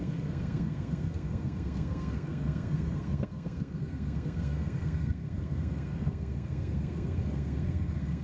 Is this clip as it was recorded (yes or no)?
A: no